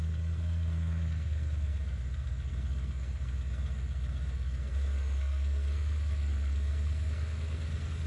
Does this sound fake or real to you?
fake